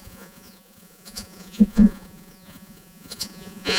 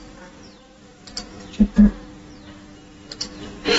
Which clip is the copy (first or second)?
first